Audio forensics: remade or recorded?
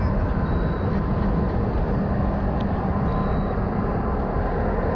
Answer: recorded